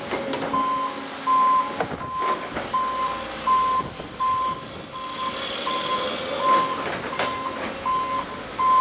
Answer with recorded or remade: recorded